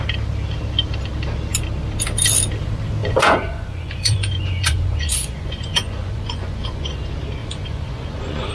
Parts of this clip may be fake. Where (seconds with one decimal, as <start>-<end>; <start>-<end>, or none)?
3.0-7.0; 7.4-8.5